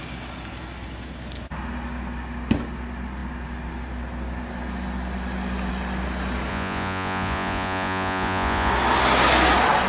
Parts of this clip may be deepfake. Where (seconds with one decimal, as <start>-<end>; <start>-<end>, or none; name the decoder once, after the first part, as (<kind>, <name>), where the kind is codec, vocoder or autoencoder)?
6.5-8.7 (vocoder, Vocos)